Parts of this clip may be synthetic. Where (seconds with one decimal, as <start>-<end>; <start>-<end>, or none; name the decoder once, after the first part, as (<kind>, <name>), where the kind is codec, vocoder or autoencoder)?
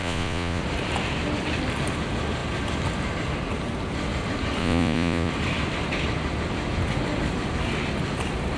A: 0.0-0.6 (vocoder, Vocos); 4.6-5.3